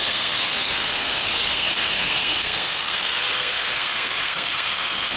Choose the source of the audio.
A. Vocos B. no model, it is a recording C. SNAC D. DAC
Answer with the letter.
C